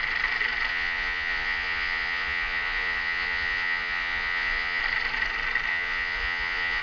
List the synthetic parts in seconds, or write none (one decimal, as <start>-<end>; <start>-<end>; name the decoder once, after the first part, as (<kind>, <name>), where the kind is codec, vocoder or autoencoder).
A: 0.7-4.8 (vocoder, Vocos); 5.7-6.8